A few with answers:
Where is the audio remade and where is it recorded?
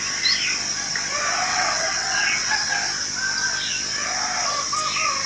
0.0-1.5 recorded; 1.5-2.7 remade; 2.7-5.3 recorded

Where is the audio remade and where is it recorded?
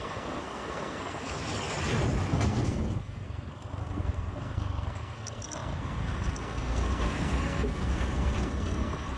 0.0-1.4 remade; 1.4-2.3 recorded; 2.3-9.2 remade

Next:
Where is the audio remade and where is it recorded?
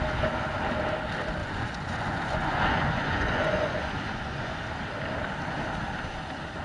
0.0-1.4 recorded; 1.4-4.7 remade; 4.7-6.6 recorded